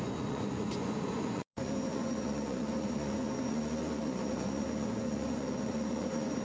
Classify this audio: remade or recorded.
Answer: remade